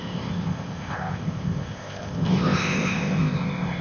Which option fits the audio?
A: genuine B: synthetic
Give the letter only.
B